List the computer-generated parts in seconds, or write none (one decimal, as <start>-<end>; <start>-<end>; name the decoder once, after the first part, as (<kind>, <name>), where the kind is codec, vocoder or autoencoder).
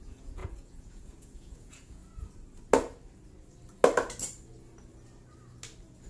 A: 0.0-2.0 (vocoder, Vocos)